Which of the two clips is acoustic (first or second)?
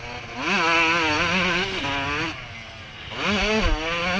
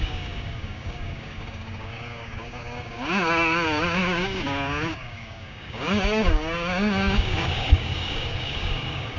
first